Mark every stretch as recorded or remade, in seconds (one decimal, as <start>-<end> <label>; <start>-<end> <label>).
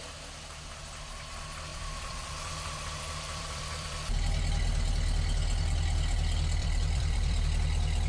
0.0-1.7 recorded; 1.7-4.1 remade; 4.1-6.6 recorded; 6.6-7.5 remade; 7.5-8.1 recorded